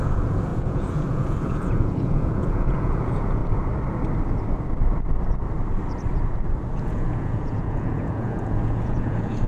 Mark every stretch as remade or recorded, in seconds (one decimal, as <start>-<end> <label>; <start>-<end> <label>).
0.0-3.4 remade; 3.4-6.8 recorded; 6.8-9.5 remade